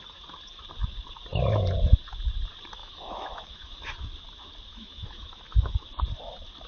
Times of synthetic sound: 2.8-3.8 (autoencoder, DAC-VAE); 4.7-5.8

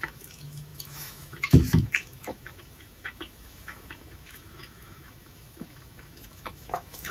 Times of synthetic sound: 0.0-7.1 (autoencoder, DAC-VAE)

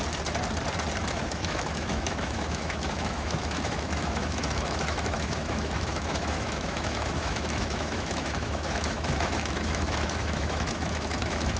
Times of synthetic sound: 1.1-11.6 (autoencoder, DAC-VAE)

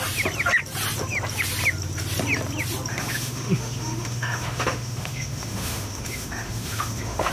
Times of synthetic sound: 2.9-7.3 (autoencoder, DAC-VAE)